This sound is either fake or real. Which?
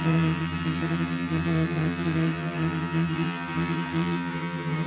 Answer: fake